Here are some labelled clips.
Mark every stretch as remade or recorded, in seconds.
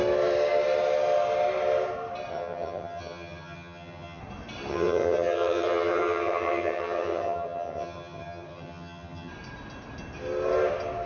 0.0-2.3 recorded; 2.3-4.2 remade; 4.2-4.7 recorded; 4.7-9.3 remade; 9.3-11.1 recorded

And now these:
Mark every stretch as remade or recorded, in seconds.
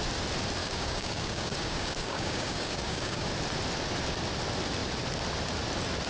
0.0-0.6 recorded; 0.6-3.3 remade; 3.3-6.1 recorded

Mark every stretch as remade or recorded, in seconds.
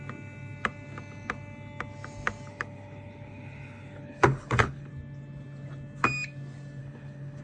0.0-2.5 recorded; 2.5-4.9 remade; 4.9-6.8 recorded; 6.8-7.4 remade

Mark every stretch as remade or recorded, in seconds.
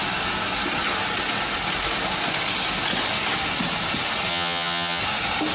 0.0-4.3 recorded; 4.3-5.0 remade; 5.0-5.5 recorded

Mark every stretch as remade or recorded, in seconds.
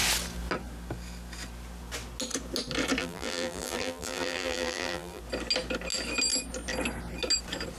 0.0-3.0 recorded; 3.0-5.2 remade; 5.2-7.8 recorded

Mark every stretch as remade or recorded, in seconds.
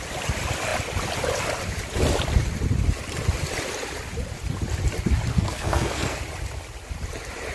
0.0-5.3 recorded; 5.3-6.2 remade; 6.2-7.5 recorded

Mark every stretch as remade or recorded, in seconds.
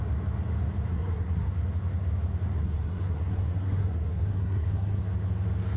0.0-0.9 recorded; 0.9-1.5 remade; 1.5-2.6 recorded; 2.6-5.0 remade; 5.0-5.8 recorded